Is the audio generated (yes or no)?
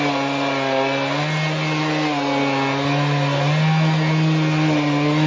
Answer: no